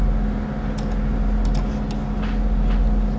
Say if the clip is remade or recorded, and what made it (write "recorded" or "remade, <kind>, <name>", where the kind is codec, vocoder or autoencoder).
recorded